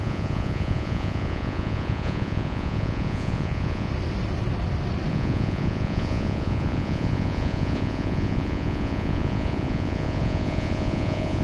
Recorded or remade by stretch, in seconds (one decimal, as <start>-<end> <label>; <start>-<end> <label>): 0.0-3.9 remade; 3.9-5.1 recorded; 5.1-11.4 remade